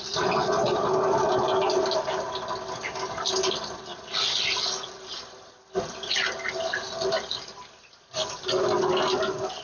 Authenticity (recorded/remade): recorded